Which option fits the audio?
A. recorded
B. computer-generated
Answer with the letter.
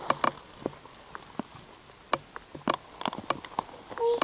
A